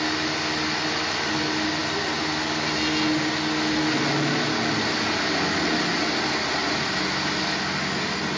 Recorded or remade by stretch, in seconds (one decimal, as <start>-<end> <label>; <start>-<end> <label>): 0.0-8.4 recorded

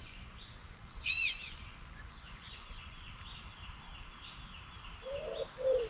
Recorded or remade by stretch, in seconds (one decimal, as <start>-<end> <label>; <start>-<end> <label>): 0.0-3.1 remade; 3.1-5.9 recorded

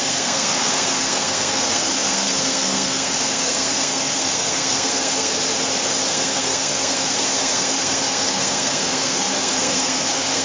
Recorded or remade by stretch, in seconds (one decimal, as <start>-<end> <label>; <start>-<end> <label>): 0.0-5.3 remade; 5.3-6.1 recorded; 6.1-10.4 remade

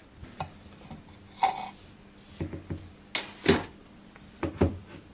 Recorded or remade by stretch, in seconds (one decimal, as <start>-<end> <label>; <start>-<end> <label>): 0.0-3.8 recorded; 3.8-5.1 remade

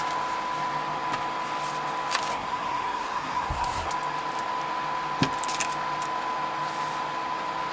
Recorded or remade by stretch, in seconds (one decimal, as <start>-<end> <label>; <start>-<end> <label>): 0.0-2.3 recorded; 2.3-3.9 remade; 3.9-7.7 recorded